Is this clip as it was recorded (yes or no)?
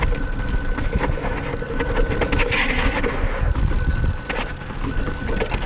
yes